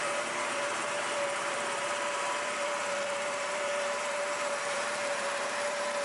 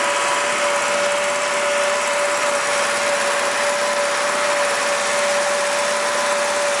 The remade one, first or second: first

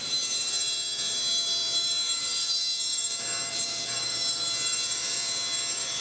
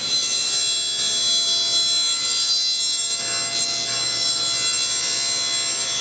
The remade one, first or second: first